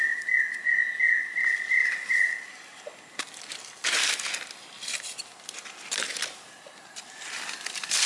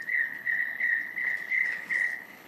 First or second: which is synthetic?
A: second